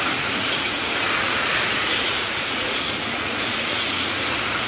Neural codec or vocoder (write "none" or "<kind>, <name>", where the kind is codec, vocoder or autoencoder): vocoder, Vocos